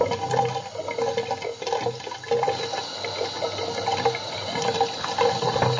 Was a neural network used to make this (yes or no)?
no